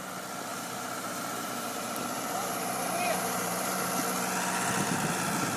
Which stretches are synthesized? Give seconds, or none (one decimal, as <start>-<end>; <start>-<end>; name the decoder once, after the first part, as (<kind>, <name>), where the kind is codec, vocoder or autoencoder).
0.5-3.9 (vocoder, BigVGAN v2)